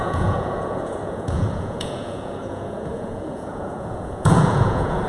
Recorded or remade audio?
remade